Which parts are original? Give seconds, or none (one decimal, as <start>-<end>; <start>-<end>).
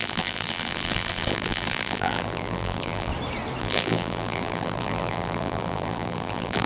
3.1-3.6